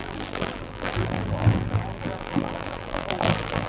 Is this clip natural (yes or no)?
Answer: no